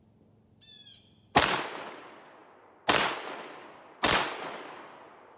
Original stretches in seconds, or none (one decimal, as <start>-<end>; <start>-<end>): 0.0-5.4